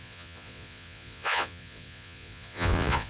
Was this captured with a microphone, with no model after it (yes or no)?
no